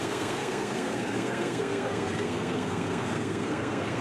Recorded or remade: remade